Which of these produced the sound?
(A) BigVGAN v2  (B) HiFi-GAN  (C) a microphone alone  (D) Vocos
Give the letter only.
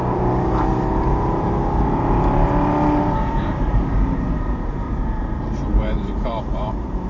A